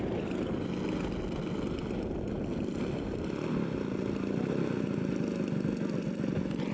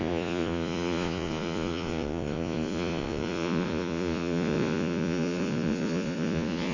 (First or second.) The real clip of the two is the first